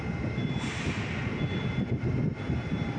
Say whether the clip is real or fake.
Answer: real